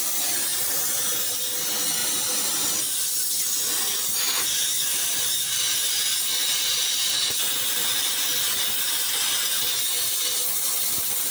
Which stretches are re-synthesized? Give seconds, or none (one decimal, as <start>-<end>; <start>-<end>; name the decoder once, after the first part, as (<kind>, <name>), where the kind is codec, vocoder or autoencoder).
0.5-1.1 (vocoder, BigVGAN v2); 2.0-2.7; 4.9-8.1